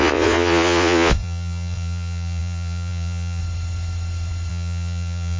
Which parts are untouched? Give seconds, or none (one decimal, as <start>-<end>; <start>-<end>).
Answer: 3.4-4.5